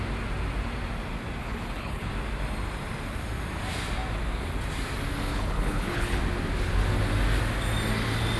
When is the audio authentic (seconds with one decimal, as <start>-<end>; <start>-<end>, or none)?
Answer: 0.0-1.4; 2.1-5.3; 6.2-8.4